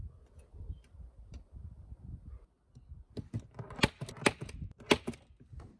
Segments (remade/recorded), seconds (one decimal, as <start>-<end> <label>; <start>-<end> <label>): 0.0-5.8 recorded